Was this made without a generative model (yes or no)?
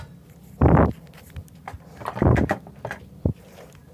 yes